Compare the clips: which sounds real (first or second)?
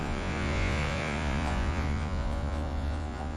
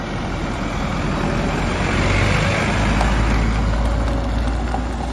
second